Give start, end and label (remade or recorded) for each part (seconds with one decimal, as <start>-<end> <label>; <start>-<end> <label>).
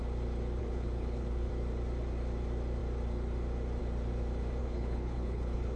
0.0-0.6 recorded; 0.6-1.5 remade; 1.5-4.6 recorded; 4.6-5.8 remade